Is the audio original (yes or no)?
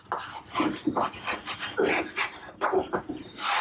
yes